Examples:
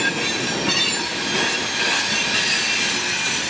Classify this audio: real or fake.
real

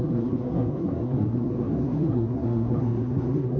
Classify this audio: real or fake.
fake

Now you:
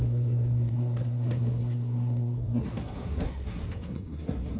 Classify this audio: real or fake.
fake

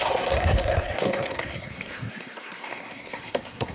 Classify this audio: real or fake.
fake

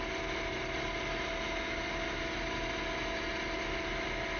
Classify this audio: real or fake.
real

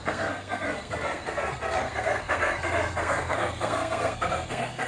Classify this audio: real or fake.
fake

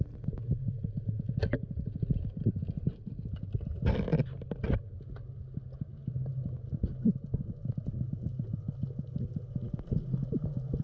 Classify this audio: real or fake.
real